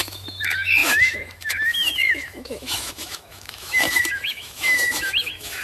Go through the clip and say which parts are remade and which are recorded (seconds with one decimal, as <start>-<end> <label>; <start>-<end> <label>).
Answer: 0.0-5.6 remade